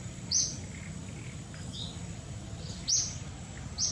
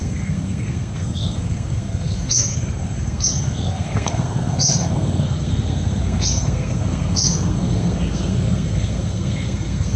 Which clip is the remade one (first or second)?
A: second